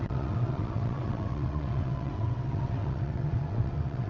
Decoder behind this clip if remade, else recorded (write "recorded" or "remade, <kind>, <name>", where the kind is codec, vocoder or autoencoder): remade, vocoder, WaveNeXt